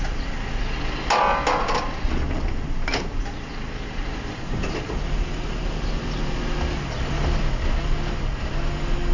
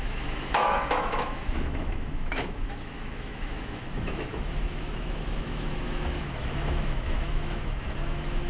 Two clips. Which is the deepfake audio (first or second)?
second